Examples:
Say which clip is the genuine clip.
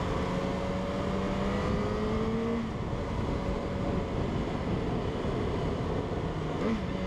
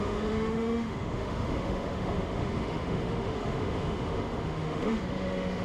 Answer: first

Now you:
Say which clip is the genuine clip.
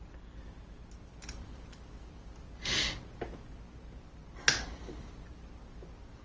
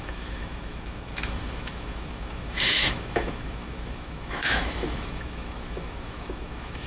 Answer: first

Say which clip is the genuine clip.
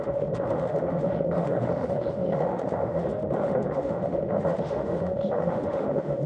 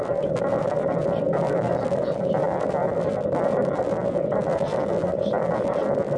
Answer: second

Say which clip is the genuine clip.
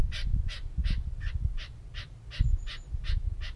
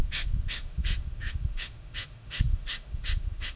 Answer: first